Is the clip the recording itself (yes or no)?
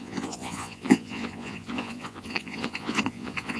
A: no